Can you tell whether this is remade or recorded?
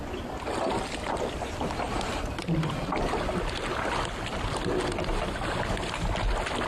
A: recorded